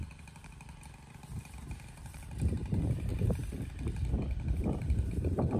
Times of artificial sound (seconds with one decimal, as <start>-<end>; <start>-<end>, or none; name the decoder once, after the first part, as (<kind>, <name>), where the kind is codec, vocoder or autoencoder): 1.1-3.1 (vocoder, BigVGAN v2); 4.6-5.6